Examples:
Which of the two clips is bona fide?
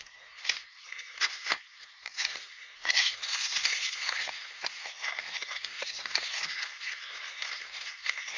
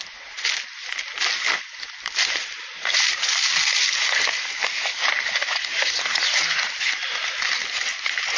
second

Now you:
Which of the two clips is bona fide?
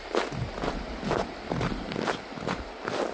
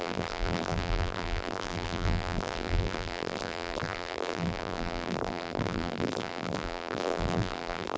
first